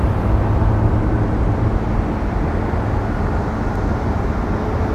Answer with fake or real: real